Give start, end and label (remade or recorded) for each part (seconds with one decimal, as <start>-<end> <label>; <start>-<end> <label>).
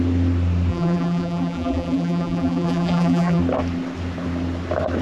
0.0-0.7 recorded; 0.7-3.4 remade; 3.4-5.0 recorded